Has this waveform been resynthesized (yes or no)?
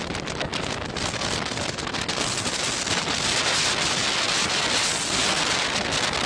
no